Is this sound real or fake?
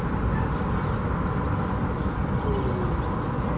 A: real